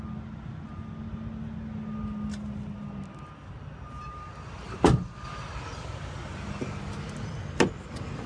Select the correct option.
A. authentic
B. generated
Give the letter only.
A